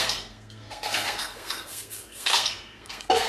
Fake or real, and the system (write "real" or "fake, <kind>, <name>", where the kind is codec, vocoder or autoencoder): fake, codec, SNAC